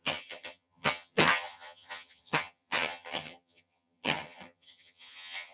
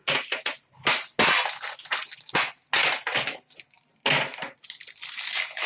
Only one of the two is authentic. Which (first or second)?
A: second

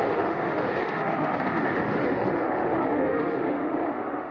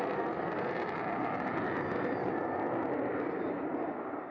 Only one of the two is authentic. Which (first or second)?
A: second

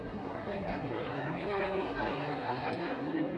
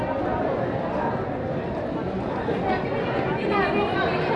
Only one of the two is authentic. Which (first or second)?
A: second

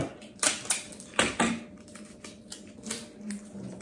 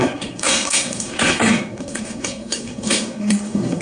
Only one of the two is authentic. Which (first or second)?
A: first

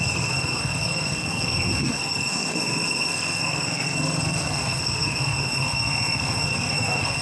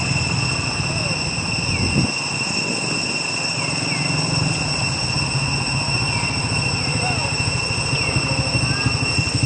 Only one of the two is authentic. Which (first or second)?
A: second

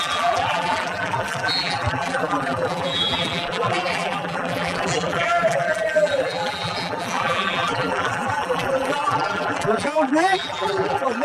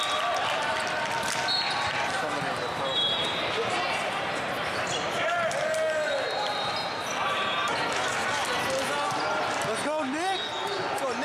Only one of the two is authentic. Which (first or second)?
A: second